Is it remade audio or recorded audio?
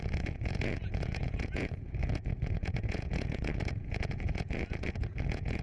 remade